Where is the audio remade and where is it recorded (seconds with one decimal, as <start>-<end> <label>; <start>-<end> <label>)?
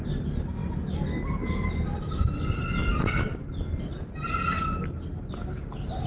0.0-6.1 recorded